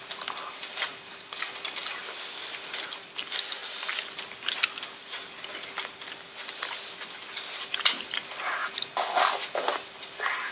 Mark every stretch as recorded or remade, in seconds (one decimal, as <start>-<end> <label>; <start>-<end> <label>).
0.0-10.5 recorded